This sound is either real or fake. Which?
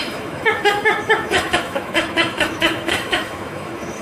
fake